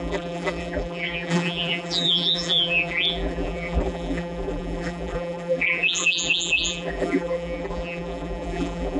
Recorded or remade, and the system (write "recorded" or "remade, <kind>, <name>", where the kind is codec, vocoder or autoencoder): remade, vocoder, BigVGAN v2